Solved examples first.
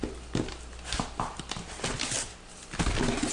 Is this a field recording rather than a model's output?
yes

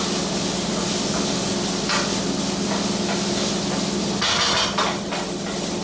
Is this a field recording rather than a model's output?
yes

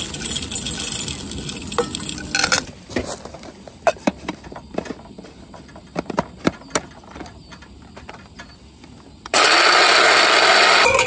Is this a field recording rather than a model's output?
yes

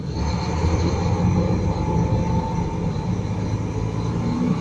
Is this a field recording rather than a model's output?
yes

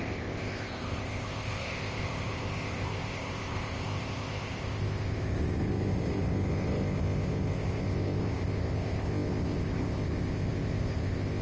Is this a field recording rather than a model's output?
no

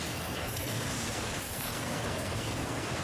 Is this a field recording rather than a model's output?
no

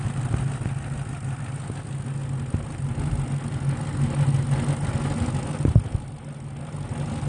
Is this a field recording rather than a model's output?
yes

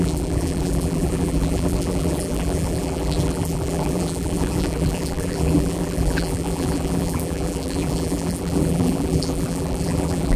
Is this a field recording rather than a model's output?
no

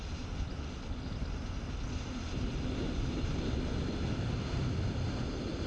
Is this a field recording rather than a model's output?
yes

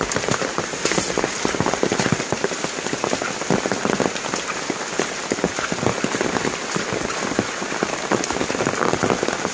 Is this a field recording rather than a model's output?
yes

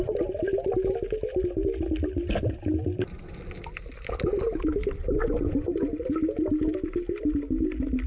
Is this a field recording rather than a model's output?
yes